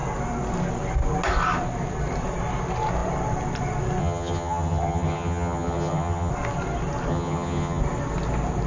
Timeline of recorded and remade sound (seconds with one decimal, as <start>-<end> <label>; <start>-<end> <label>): 0.0-4.0 recorded; 4.0-6.3 remade; 6.3-7.1 recorded; 7.1-7.8 remade; 7.8-8.7 recorded